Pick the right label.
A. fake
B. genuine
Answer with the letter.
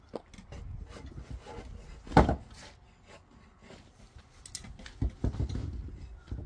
B